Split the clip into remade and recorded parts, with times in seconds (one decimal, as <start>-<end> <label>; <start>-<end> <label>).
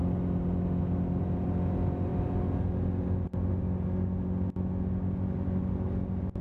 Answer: 0.0-6.4 recorded